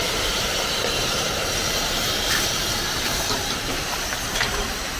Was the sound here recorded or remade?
remade